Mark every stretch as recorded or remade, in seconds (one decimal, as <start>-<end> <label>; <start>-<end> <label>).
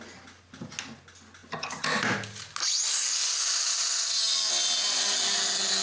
0.0-5.8 recorded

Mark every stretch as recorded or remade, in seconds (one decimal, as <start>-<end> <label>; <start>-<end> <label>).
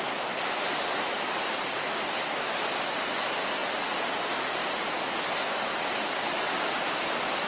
0.0-7.5 recorded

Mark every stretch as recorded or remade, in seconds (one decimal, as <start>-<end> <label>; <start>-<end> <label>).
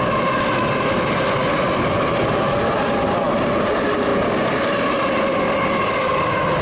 0.0-6.6 recorded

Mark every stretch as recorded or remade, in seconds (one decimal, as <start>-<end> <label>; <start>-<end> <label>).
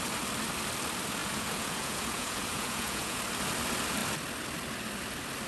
0.0-1.2 recorded; 1.2-3.2 remade; 3.2-5.5 recorded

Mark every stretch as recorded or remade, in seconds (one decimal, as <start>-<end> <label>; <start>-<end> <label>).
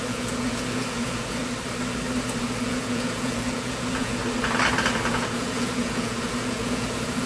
0.0-1.4 remade; 1.4-2.4 recorded; 2.4-4.2 remade; 4.2-5.1 recorded; 5.1-7.3 remade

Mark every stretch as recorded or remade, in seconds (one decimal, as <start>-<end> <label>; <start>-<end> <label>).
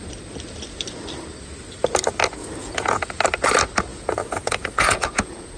0.0-2.4 recorded; 2.4-3.2 remade; 3.2-3.9 recorded; 3.9-5.6 remade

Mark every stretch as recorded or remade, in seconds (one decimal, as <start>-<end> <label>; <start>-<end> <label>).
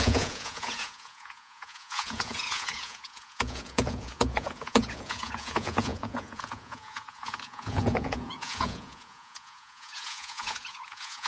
0.0-11.3 remade